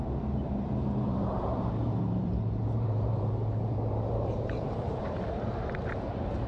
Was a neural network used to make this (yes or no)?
yes